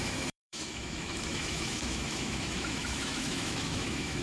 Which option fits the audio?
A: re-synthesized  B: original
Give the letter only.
A